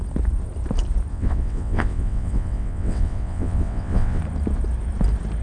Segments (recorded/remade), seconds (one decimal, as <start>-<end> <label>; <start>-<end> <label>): 0.0-1.1 recorded; 1.1-4.2 remade; 4.2-5.4 recorded

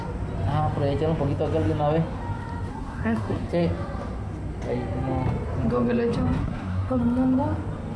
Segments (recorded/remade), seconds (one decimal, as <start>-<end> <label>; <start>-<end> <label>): 0.0-2.7 recorded; 2.7-3.5 remade; 3.5-6.4 recorded; 6.4-7.0 remade; 7.0-8.0 recorded

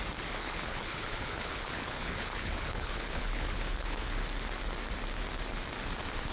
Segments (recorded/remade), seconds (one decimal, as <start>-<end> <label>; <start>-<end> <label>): 0.0-0.4 recorded; 0.4-4.2 remade; 4.2-6.3 recorded

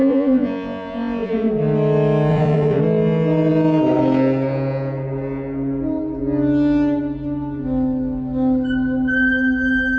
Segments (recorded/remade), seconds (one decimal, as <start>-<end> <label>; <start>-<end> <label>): 0.0-1.5 remade; 1.5-2.3 recorded; 2.3-2.8 remade; 2.8-10.0 recorded

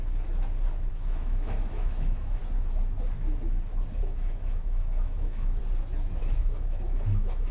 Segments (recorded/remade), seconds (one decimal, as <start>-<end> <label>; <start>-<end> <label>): 0.0-0.9 recorded; 0.9-2.4 remade; 2.4-4.0 recorded; 4.0-5.6 remade; 5.6-6.2 recorded; 6.2-7.5 remade

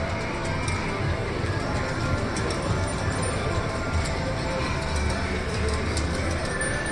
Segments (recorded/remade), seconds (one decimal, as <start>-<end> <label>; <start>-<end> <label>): 0.0-1.2 recorded; 1.2-4.8 remade; 4.8-6.9 recorded

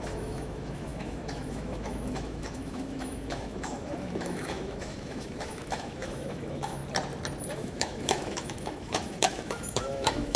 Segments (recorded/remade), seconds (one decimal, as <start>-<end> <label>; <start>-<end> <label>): 0.0-6.8 remade; 6.8-7.5 recorded; 7.5-10.4 remade